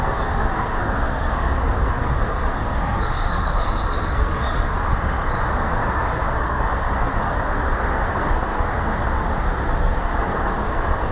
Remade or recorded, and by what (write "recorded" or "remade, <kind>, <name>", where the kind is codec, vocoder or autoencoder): remade, codec, SNAC